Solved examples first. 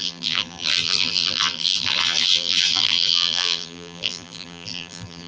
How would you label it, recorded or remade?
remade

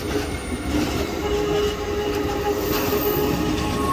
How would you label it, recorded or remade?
recorded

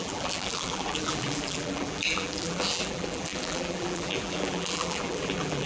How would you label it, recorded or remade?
remade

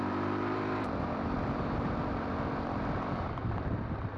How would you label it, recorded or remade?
remade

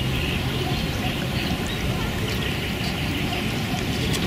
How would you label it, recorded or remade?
recorded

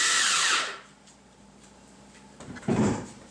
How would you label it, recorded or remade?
remade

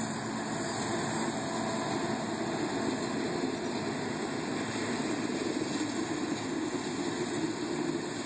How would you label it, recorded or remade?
recorded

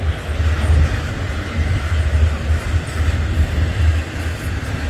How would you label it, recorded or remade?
recorded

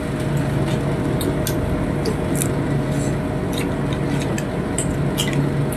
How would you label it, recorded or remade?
recorded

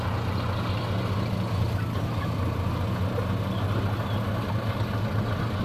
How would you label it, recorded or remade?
recorded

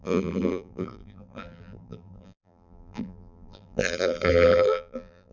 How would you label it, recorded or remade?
remade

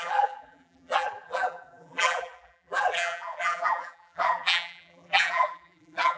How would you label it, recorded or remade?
remade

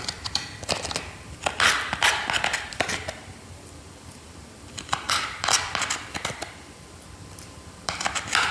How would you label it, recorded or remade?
remade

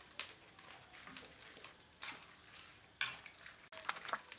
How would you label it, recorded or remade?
recorded